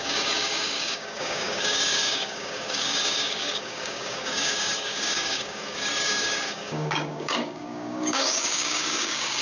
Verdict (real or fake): fake